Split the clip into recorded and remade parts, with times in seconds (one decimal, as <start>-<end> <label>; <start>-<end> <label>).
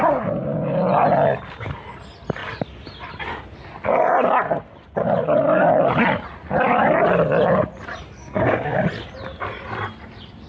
0.0-8.2 recorded; 8.2-8.8 remade; 8.8-10.5 recorded